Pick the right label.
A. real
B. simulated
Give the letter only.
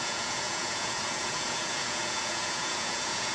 B